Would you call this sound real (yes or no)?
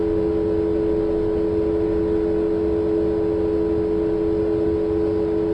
yes